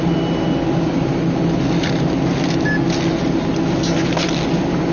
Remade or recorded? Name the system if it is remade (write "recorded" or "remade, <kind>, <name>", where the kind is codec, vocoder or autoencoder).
recorded